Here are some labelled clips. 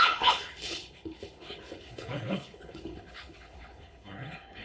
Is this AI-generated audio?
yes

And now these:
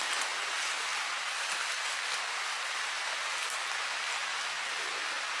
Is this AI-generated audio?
no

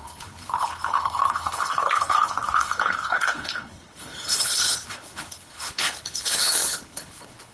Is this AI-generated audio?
yes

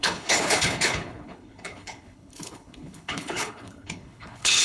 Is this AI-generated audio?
yes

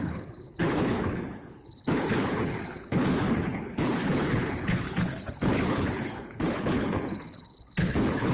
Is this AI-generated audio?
yes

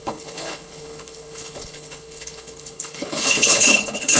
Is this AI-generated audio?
yes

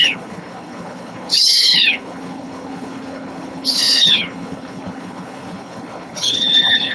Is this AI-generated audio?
yes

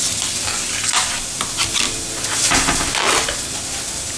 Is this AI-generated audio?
no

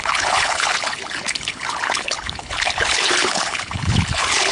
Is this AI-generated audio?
yes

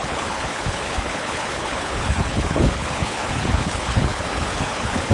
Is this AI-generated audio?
yes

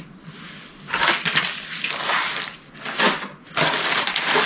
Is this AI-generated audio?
no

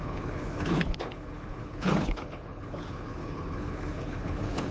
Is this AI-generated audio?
yes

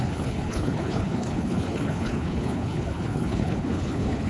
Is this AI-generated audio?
yes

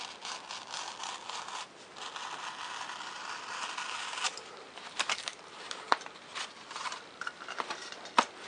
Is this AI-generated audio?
no